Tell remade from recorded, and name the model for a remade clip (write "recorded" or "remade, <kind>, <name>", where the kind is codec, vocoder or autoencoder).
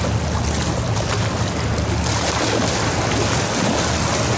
recorded